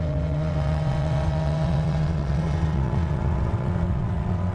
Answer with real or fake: fake